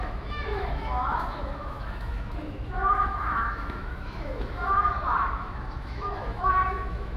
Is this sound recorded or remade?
remade